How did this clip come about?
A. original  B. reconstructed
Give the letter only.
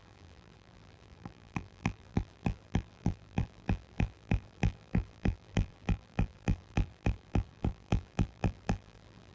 B